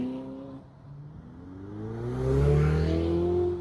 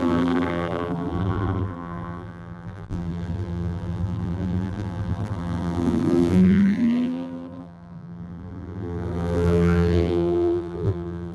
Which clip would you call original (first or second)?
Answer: first